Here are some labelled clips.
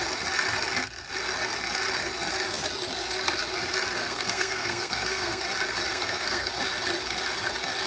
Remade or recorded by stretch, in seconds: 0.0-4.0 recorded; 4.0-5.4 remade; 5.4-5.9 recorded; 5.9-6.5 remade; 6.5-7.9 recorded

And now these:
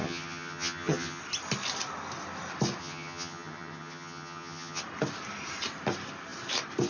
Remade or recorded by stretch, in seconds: 0.0-1.2 remade; 1.2-2.8 recorded; 2.8-4.8 remade; 4.8-6.9 recorded

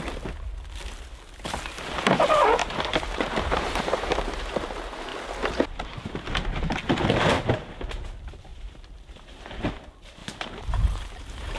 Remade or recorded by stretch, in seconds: 0.0-2.6 recorded; 2.6-4.2 remade; 4.2-8.5 recorded; 8.5-9.4 remade; 9.4-10.2 recorded; 10.2-11.6 remade

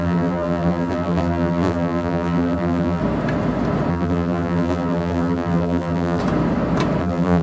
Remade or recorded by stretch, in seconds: 0.0-3.0 remade; 3.0-3.9 recorded; 3.9-6.2 remade; 6.2-7.0 recorded; 7.0-7.4 remade

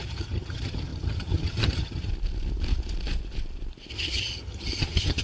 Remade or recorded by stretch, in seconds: 0.0-2.1 remade; 2.1-3.9 recorded; 3.9-5.2 remade

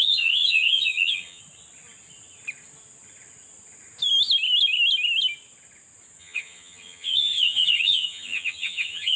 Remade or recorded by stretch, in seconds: 0.0-1.4 remade; 1.4-6.2 recorded; 6.2-9.2 remade

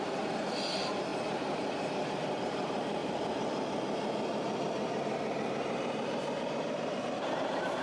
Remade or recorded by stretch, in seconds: 0.0-7.8 remade

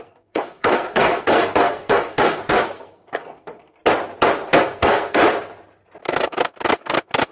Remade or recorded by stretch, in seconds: 0.0-3.8 remade; 3.8-4.6 recorded; 4.6-5.2 remade; 5.2-6.0 recorded; 6.0-7.3 remade